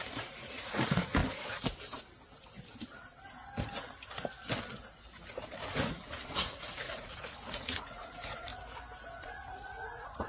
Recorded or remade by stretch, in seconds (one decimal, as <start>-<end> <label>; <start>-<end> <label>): 0.0-1.2 remade; 1.2-5.6 recorded; 5.6-8.5 remade; 8.5-9.2 recorded; 9.2-10.3 remade

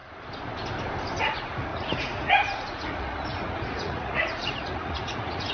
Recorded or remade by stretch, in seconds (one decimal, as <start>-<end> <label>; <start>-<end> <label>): 0.0-1.2 recorded; 1.2-5.5 remade

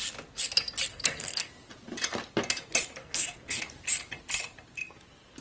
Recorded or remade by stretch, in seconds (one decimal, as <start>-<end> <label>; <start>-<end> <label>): 0.0-0.9 recorded; 0.9-1.5 remade; 1.5-3.0 recorded; 3.0-3.6 remade; 3.6-5.4 recorded

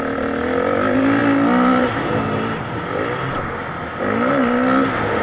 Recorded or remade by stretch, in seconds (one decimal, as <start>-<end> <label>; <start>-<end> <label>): 0.0-5.2 recorded

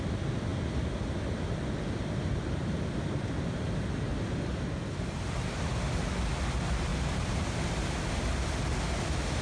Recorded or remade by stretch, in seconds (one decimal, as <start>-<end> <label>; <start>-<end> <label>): 0.0-4.1 recorded; 4.1-5.7 remade; 5.7-6.9 recorded; 6.9-8.1 remade; 8.1-9.4 recorded

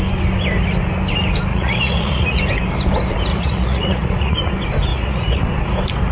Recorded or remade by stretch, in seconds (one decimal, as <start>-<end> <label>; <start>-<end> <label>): 0.0-1.5 recorded; 1.5-2.4 remade; 2.4-3.3 recorded; 3.3-4.5 remade; 4.5-4.9 recorded; 4.9-5.4 remade; 5.4-6.1 recorded